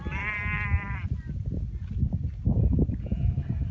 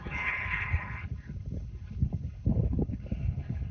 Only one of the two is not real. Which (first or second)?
second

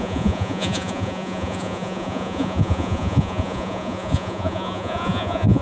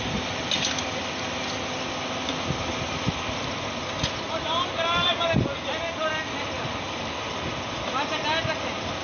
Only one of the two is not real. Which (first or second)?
first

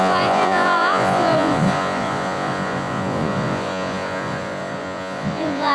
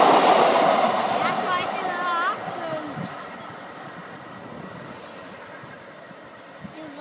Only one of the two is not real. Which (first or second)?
first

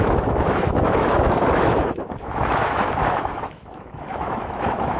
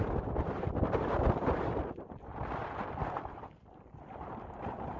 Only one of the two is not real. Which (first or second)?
first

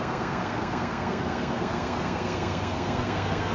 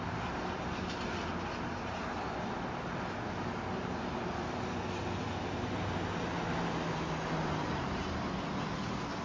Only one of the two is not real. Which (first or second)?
first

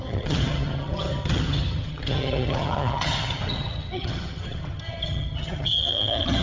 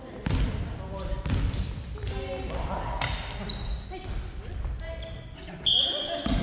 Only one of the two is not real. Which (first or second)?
first